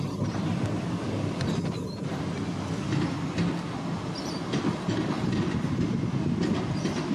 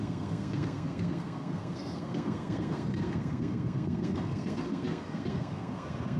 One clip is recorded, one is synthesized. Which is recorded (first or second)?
first